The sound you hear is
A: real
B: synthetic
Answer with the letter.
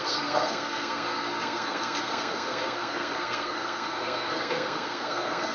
B